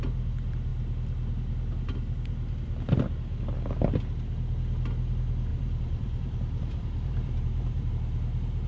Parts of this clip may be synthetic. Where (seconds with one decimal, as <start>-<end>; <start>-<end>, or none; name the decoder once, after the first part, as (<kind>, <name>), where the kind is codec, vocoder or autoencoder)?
5.5-7.9 (vocoder, BigVGAN v2)